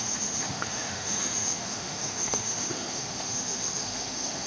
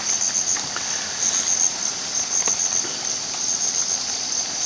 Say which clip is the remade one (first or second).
first